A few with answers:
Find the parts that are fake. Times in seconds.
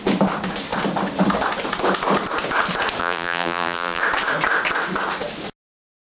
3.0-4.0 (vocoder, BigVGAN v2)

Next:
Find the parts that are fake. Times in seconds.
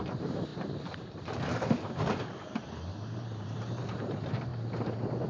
0.0-2.9 (vocoder, BigVGAN v2); 3.6-4.5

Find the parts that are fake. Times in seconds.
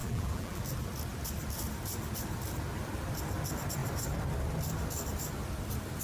0.0-0.6 (vocoder, BigVGAN v2)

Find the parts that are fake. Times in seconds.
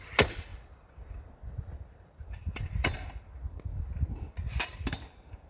0.5-3.8 (vocoder, BigVGAN v2); 4.7-5.5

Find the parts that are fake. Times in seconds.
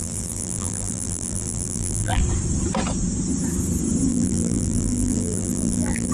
0.0-2.2 (vocoder, BigVGAN v2); 4.1-6.1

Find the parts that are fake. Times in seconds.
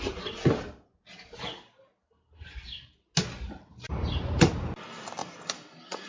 3.7-4.4 (vocoder, BigVGAN v2); 5.2-6.1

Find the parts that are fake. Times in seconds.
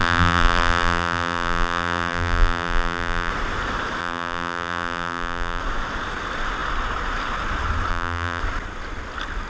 0.0-3.3 (vocoder, BigVGAN v2); 4.0-5.6; 7.9-8.4